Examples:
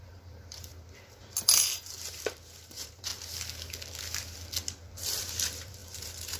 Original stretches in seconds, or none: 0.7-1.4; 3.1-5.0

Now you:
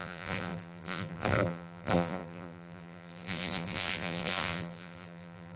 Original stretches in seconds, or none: none

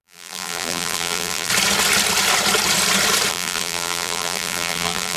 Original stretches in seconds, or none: 1.5-3.3

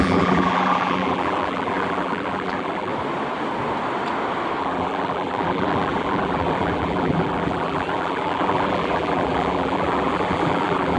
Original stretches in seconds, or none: 2.9-4.6

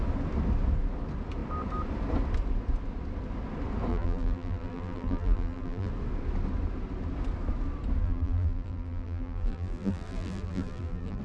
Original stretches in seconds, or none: 0.0-3.9; 5.9-8.0

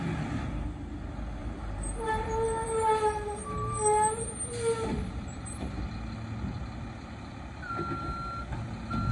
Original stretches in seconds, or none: 0.0-1.4; 5.4-9.1